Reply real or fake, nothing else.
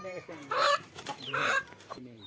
fake